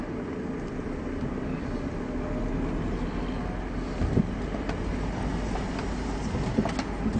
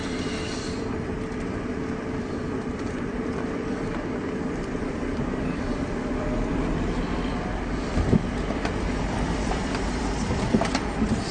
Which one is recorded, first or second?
first